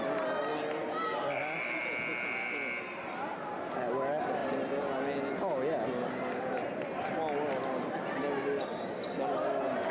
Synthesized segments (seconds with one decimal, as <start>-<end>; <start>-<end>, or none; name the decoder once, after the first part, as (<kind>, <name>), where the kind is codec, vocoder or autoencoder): none